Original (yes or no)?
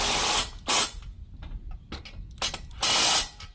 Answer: yes